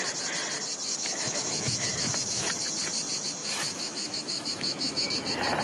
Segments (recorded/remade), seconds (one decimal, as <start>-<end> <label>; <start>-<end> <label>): 0.0-0.9 recorded; 0.9-2.5 remade; 2.5-3.4 recorded; 3.4-5.1 remade; 5.1-5.6 recorded